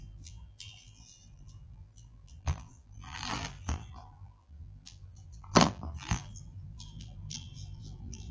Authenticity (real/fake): fake